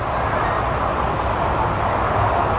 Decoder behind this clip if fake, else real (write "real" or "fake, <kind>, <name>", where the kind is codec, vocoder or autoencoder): real